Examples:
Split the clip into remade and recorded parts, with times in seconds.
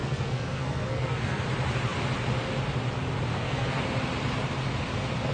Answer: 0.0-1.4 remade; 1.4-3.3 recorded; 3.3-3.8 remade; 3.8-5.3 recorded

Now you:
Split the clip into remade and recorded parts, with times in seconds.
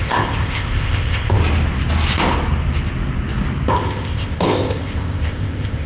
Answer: 0.0-1.4 remade; 1.4-3.7 recorded; 3.7-5.9 remade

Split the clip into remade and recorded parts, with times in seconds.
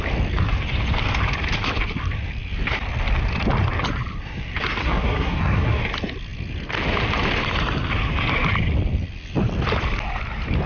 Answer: 0.0-4.8 recorded; 4.8-5.8 remade; 5.8-10.7 recorded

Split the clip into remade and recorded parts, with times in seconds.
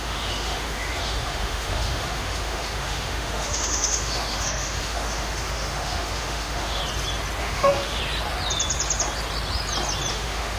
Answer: 0.0-6.8 remade; 6.8-7.4 recorded; 7.4-8.0 remade; 8.0-10.1 recorded; 10.1-10.6 remade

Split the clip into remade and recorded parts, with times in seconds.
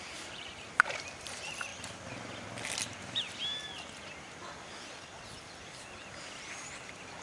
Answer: 0.0-1.7 remade; 1.7-3.0 recorded; 3.0-3.4 remade; 3.4-6.6 recorded; 6.6-7.2 remade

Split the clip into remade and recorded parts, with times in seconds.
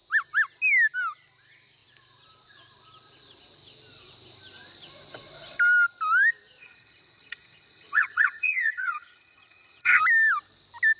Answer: 0.0-6.6 recorded; 6.6-10.0 remade; 10.0-11.0 recorded